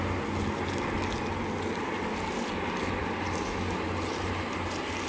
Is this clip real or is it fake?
real